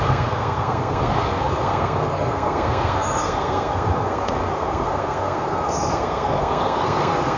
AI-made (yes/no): yes